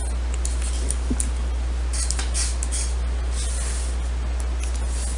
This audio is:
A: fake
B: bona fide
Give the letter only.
B